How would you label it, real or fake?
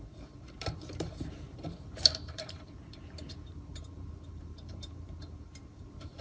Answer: fake